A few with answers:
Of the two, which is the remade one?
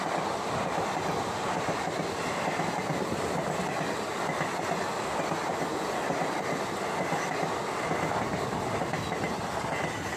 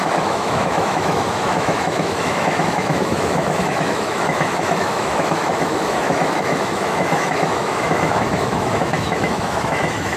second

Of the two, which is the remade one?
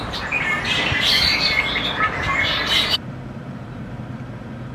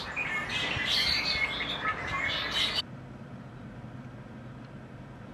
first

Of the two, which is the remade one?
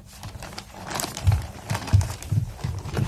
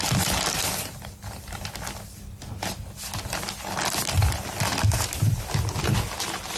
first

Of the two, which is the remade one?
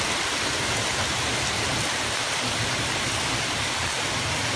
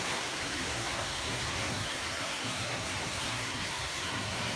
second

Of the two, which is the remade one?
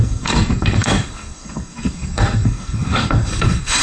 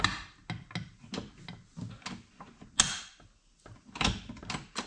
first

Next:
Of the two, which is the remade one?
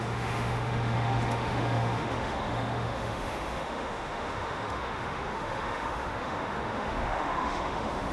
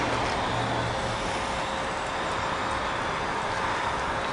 first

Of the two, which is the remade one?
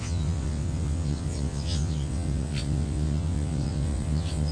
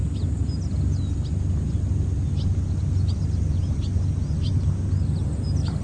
first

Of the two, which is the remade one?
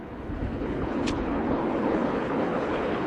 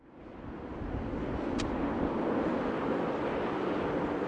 first